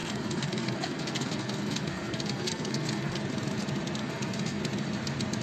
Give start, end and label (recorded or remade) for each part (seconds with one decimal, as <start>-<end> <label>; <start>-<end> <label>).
0.0-3.2 remade; 3.2-4.0 recorded; 4.0-4.6 remade; 4.6-5.4 recorded